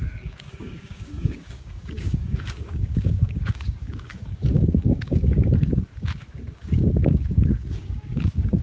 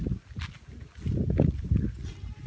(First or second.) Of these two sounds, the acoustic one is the second